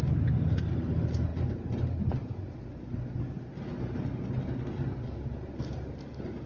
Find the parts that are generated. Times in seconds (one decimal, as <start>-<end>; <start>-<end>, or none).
none